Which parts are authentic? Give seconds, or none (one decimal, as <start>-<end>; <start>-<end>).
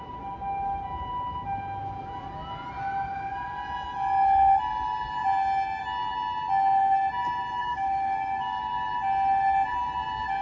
0.0-7.6; 8.6-10.4